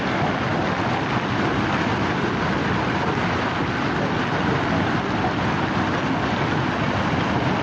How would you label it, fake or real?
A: real